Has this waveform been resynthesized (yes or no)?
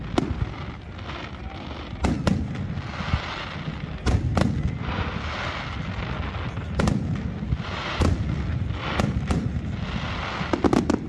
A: no